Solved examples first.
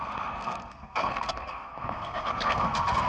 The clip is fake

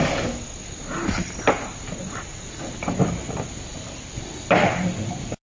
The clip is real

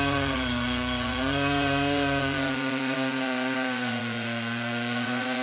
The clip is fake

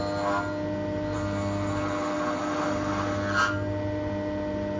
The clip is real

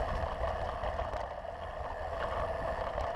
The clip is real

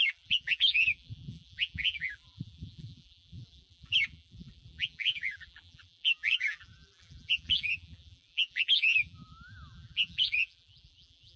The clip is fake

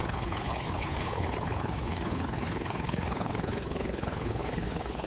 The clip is fake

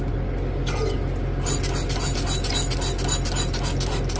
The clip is real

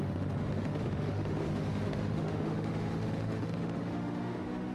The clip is fake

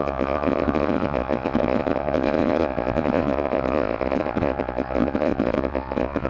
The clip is fake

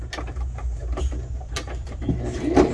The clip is real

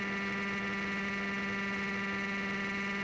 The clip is real